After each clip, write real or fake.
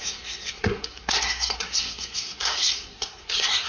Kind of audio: fake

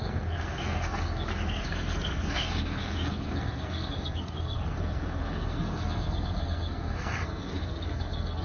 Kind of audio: fake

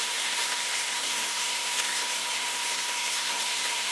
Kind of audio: fake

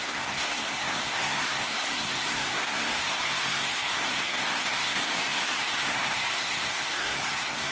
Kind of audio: fake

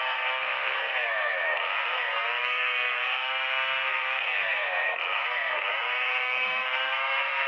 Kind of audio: fake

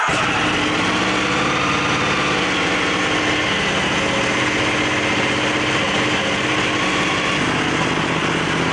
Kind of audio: real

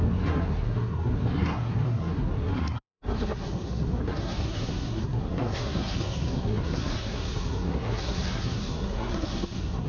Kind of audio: fake